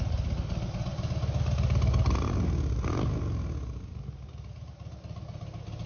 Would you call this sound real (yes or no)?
yes